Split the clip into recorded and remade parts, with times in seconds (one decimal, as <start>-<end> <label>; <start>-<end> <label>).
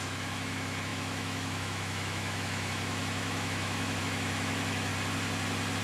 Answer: 0.0-4.9 remade; 4.9-5.8 recorded